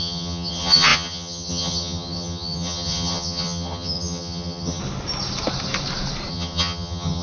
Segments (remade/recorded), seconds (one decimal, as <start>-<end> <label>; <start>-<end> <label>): 0.0-4.8 remade; 4.8-6.3 recorded; 6.3-7.2 remade